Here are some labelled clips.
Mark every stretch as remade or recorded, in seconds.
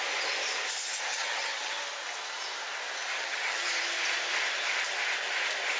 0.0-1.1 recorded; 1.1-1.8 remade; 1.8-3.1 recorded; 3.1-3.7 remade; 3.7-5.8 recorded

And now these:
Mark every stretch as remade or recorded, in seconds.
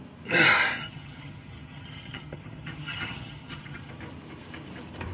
0.0-0.8 recorded; 0.8-3.9 remade; 3.9-5.1 recorded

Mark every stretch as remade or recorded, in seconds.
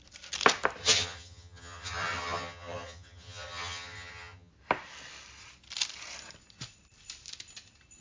0.0-0.8 recorded; 0.8-4.5 remade; 4.5-8.0 recorded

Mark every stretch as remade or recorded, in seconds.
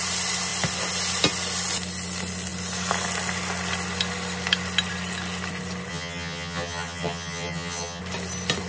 0.0-5.9 recorded; 5.9-8.0 remade; 8.0-8.7 recorded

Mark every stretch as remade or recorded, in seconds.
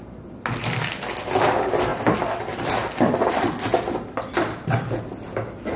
0.0-5.8 recorded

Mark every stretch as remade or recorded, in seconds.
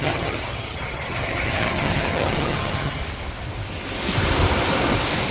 0.0-3.0 remade; 3.0-5.3 recorded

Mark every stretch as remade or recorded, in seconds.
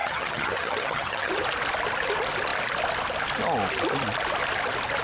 0.0-1.3 remade; 1.3-5.0 recorded